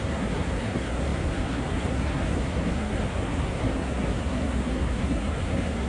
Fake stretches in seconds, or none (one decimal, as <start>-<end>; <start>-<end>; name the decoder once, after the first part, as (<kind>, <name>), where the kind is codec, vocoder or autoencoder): 0.0-5.9 (codec, SNAC)

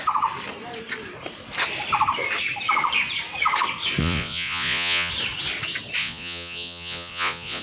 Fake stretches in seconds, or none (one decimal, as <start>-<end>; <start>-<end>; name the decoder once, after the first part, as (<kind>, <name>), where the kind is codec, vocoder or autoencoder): 4.0-5.1 (vocoder, Vocos); 6.0-7.6

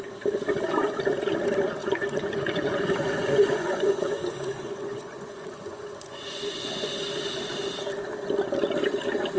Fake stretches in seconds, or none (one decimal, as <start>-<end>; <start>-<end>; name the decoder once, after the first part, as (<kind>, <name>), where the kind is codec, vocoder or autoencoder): 1.8-6.9 (vocoder, Vocos)